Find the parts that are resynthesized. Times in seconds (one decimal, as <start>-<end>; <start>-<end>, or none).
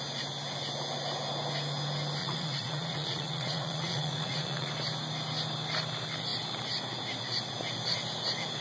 2.2-4.7